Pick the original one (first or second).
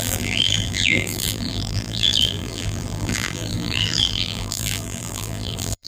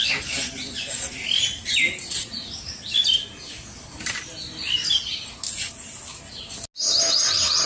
second